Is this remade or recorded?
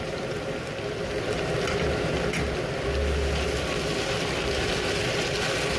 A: recorded